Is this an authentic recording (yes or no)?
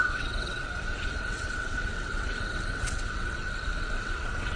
no